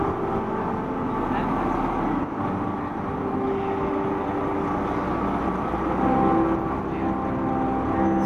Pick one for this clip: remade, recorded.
recorded